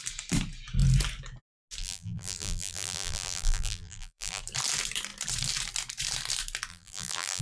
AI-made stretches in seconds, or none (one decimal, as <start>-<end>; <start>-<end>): 1.8-4.4; 6.7-7.4